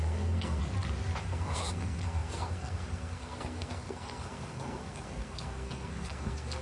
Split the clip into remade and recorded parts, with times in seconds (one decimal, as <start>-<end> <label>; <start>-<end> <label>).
0.0-0.6 remade; 0.6-1.2 recorded; 1.2-6.6 remade